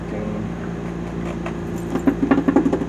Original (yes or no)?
yes